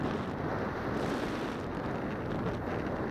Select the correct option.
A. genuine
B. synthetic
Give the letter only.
B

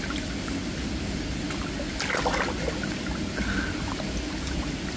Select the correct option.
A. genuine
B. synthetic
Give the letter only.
A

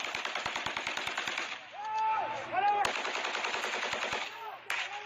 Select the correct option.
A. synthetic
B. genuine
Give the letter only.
B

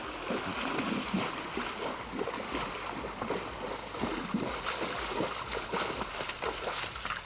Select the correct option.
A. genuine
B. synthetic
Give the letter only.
A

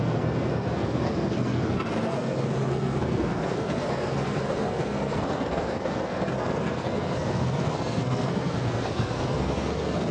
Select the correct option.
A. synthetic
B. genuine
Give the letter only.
A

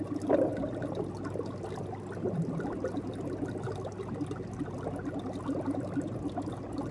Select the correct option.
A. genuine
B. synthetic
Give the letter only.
A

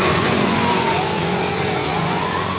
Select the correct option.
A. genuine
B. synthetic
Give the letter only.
B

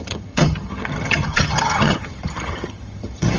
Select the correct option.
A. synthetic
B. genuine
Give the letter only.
A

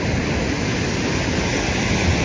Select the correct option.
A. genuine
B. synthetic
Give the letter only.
A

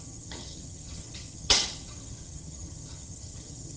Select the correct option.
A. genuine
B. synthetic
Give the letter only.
B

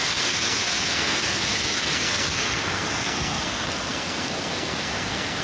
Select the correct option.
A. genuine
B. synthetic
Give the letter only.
B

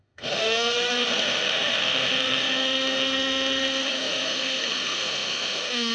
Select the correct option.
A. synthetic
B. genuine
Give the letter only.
A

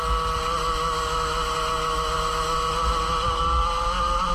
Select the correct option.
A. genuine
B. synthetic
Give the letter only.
A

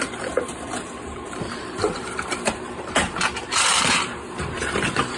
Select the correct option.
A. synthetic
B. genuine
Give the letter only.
A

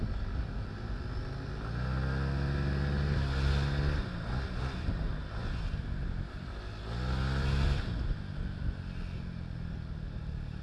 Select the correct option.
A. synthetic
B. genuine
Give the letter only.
B